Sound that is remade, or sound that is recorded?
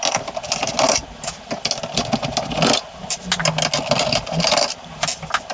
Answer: recorded